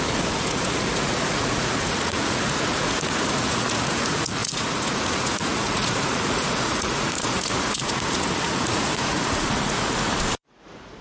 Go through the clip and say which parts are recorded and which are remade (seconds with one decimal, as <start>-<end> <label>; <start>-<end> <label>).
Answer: 0.0-11.0 remade